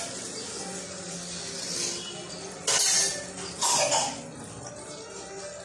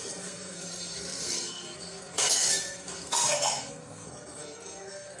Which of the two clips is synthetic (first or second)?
second